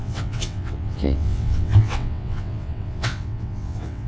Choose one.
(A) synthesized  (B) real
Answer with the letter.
A